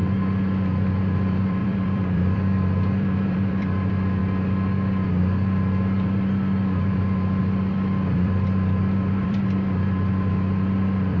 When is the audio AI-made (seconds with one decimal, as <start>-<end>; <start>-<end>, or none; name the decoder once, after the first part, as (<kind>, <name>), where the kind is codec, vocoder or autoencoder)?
0.9-4.2 (vocoder, BigVGAN v2); 7.4-11.2

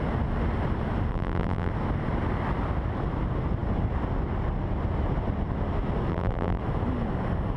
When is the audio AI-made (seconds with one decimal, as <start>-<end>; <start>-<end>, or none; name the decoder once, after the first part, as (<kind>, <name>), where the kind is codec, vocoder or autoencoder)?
1.1-1.7 (vocoder, BigVGAN v2); 6.1-6.6

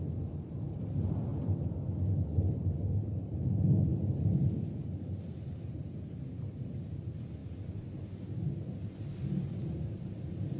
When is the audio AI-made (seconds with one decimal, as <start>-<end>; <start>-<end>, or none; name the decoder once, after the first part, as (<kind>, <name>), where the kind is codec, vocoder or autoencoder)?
0.0-1.3 (vocoder, BigVGAN v2); 2.5-7.4; 9.8-10.6

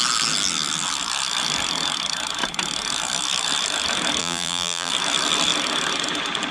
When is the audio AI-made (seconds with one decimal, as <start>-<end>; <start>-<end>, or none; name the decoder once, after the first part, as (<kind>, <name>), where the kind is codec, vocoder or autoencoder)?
4.2-4.9 (vocoder, BigVGAN v2)

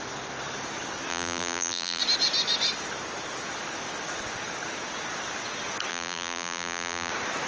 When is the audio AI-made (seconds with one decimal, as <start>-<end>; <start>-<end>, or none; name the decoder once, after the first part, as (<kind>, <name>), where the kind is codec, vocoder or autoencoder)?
1.1-2.0 (vocoder, BigVGAN v2); 5.9-7.1